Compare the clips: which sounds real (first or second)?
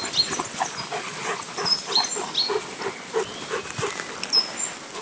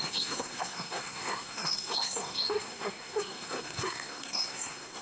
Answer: first